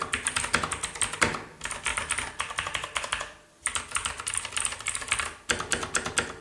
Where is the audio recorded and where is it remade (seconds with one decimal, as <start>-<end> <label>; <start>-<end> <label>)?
0.0-1.9 recorded; 1.9-4.5 remade; 4.5-6.4 recorded